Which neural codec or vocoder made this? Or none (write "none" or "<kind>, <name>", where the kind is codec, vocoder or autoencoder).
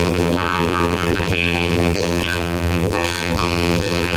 vocoder, BigVGAN v2